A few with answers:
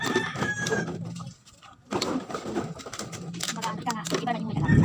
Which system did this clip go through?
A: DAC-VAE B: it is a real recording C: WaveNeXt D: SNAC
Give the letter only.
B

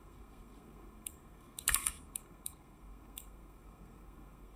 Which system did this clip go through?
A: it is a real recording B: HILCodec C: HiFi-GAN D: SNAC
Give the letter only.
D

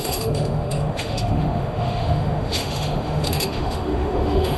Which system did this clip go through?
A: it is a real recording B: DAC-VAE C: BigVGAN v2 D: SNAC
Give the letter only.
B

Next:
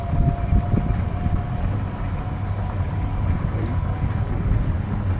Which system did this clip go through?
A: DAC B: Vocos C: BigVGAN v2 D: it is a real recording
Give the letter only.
D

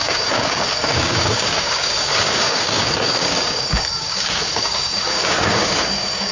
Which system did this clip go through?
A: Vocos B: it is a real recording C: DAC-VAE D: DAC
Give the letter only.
D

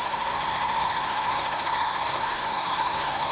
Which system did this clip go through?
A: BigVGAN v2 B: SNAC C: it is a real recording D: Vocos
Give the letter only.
B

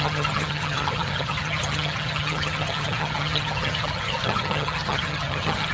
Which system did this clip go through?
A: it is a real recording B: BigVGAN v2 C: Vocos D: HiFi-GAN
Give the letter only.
D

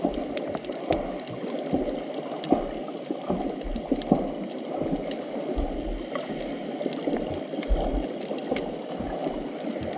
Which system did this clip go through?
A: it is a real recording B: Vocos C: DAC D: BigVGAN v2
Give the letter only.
A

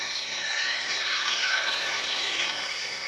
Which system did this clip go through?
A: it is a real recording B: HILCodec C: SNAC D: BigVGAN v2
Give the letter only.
C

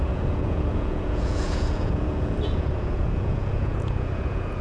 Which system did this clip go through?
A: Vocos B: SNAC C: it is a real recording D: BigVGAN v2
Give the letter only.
A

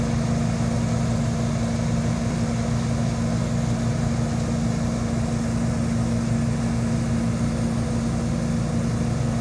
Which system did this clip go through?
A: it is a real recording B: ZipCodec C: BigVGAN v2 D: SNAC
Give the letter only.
A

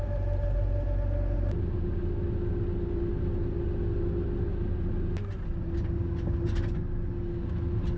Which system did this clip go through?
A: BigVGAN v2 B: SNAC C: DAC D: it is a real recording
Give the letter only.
D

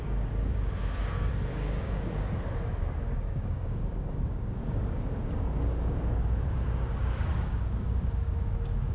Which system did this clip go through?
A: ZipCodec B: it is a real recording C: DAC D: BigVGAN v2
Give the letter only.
C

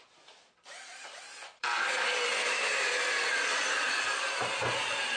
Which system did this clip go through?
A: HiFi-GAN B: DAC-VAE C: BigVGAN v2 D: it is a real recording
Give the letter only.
C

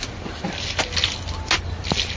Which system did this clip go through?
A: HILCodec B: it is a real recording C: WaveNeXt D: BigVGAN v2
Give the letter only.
B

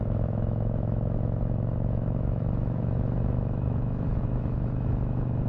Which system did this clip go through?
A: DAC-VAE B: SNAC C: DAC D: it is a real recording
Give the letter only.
A